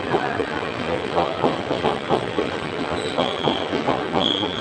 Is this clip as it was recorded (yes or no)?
no